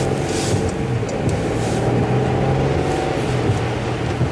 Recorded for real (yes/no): yes